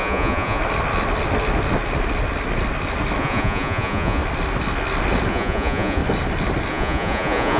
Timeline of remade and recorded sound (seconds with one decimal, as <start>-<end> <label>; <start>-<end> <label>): 0.0-0.6 remade; 0.6-3.2 recorded; 3.2-4.2 remade; 4.2-5.3 recorded; 5.3-6.0 remade; 6.0-6.7 recorded; 6.7-7.6 remade